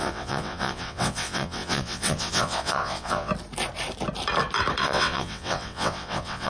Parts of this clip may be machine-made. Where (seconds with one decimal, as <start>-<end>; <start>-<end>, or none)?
0.0-3.3; 4.8-6.5